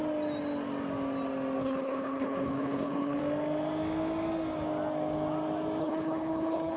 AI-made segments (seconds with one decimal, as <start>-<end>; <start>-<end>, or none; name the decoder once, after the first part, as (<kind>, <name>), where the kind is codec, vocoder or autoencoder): 1.6-3.2 (codec, HILCodec); 5.8-6.8